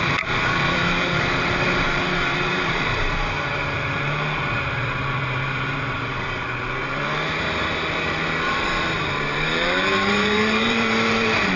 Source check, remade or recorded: remade